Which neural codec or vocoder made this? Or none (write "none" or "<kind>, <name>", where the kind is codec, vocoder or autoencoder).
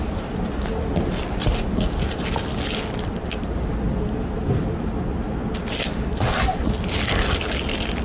none